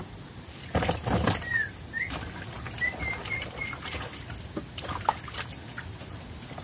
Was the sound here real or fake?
real